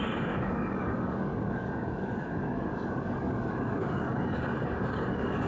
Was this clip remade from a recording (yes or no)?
yes